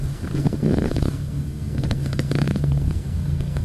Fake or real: fake